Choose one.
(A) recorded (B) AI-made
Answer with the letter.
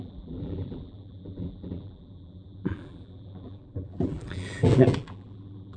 B